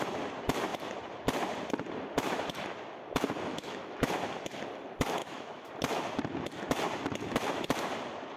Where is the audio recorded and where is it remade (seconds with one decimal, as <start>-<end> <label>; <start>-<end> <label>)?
0.0-3.5 recorded; 3.5-4.1 remade; 4.1-5.2 recorded; 5.2-5.7 remade; 5.7-8.4 recorded